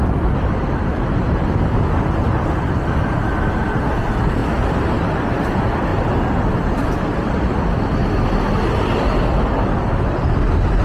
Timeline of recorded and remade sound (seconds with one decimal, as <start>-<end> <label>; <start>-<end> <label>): 0.0-10.8 recorded

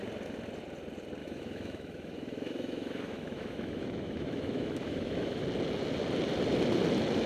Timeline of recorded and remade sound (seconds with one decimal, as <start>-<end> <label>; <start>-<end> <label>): 0.0-1.2 recorded; 1.2-5.4 remade; 5.4-7.3 recorded

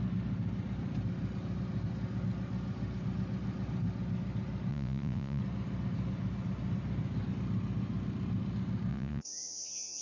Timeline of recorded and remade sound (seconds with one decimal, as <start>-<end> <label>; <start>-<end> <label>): 0.0-4.7 recorded; 4.7-5.4 remade; 5.4-8.9 recorded; 8.9-10.0 remade

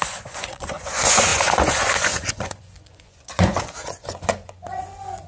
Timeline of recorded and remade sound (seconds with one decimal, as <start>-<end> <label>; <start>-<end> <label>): 0.0-5.3 remade